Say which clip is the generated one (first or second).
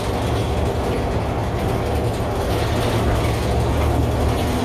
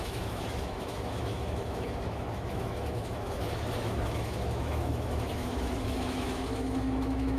second